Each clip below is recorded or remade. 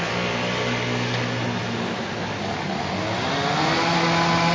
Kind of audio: recorded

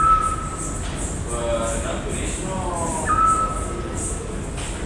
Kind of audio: recorded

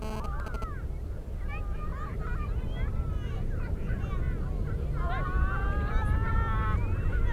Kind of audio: recorded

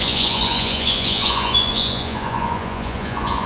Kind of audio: remade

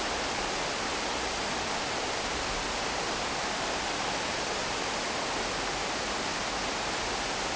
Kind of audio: recorded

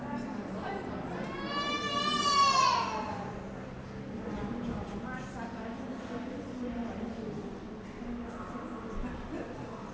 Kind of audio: recorded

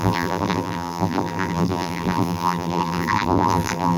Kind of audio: remade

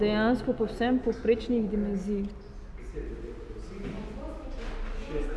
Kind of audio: recorded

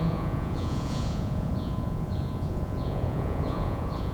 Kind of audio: remade